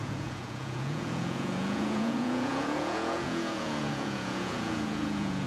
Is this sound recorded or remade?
remade